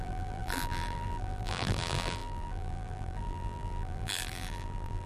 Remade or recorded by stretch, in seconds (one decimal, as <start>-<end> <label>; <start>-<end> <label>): 0.0-5.1 remade